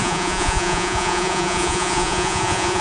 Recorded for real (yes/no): no